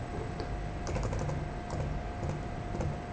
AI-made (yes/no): no